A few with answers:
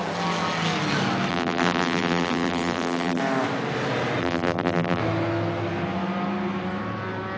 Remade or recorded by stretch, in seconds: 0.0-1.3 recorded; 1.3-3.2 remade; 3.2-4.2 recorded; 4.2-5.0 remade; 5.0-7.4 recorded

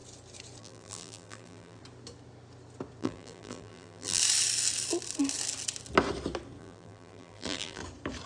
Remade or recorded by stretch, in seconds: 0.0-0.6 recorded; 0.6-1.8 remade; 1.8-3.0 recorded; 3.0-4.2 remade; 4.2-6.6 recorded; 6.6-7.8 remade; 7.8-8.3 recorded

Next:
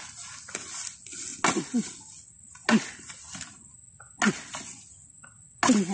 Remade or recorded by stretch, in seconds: 0.0-5.9 recorded

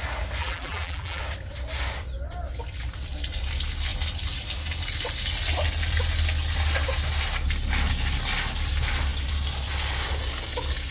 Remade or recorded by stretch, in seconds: 0.0-0.4 recorded; 0.4-1.2 remade; 1.2-10.9 recorded

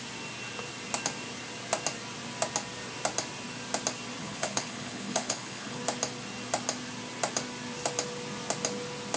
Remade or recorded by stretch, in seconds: 0.0-4.2 recorded; 4.2-5.8 remade; 5.8-9.2 recorded

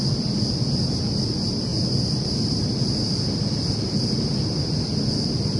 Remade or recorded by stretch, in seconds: 0.0-5.6 recorded

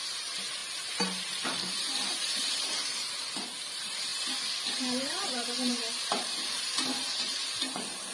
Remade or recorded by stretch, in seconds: 0.0-4.1 remade; 4.1-4.6 recorded; 4.6-8.1 remade

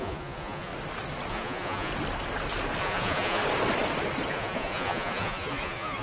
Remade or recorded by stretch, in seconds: 0.0-0.7 remade; 0.7-1.3 recorded; 1.3-1.9 remade; 1.9-2.8 recorded; 2.8-3.4 remade; 3.4-4.3 recorded; 4.3-6.0 remade